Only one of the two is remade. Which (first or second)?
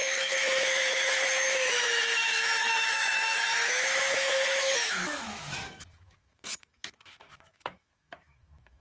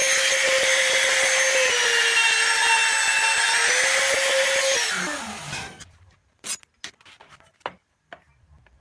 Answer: first